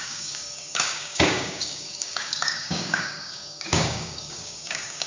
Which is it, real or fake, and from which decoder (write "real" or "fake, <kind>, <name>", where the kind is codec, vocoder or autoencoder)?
fake, codec, DAC